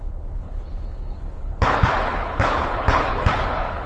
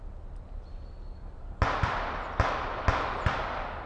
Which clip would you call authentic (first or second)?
second